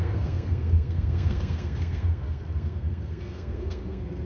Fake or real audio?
fake